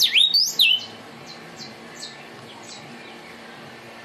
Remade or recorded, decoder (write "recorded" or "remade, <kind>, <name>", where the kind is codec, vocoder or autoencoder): remade, vocoder, BigVGAN v2